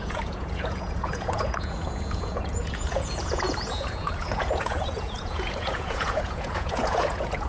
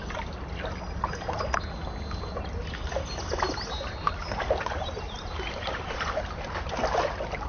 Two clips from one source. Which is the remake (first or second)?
first